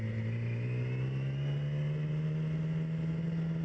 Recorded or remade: recorded